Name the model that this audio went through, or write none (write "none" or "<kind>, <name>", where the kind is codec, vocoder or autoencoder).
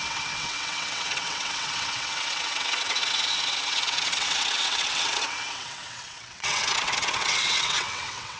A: vocoder, WaveNeXt